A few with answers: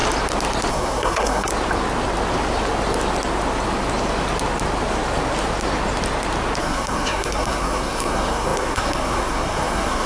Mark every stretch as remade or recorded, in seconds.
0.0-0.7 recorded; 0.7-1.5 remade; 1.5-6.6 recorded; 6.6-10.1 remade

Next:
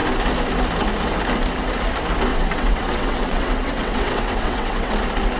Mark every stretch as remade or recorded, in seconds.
0.0-2.3 recorded; 2.3-4.9 remade; 4.9-5.4 recorded

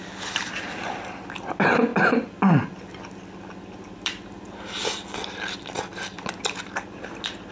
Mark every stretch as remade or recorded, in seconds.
0.0-7.5 recorded

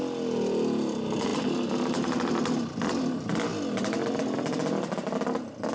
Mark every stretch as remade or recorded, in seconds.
0.0-5.7 recorded